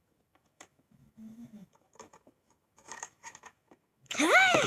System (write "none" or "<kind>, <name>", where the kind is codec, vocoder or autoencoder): autoencoder, DAC-VAE